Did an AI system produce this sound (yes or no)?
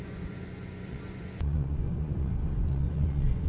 yes